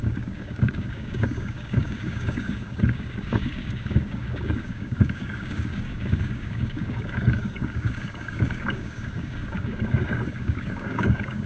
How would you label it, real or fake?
fake